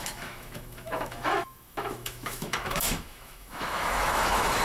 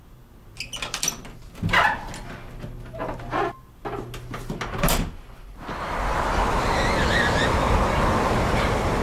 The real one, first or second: second